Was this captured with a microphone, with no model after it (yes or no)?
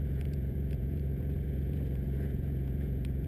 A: no